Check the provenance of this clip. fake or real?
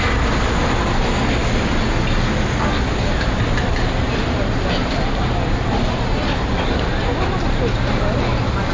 real